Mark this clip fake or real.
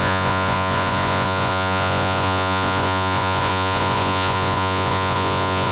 fake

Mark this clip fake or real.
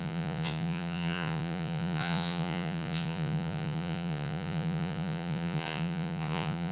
fake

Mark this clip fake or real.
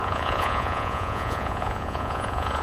fake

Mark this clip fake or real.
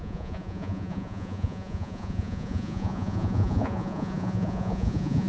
fake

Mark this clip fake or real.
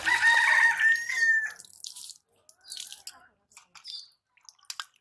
real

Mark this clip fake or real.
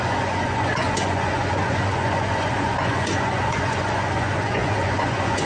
fake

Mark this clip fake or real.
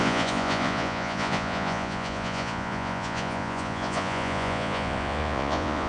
fake